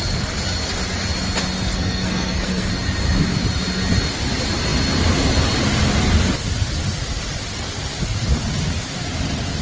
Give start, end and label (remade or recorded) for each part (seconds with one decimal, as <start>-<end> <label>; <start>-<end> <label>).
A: 0.0-1.7 recorded; 1.7-2.7 remade; 2.7-9.6 recorded